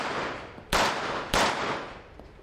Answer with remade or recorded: recorded